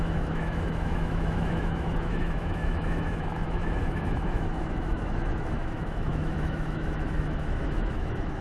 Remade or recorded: remade